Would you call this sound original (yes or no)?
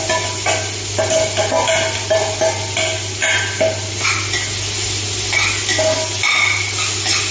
yes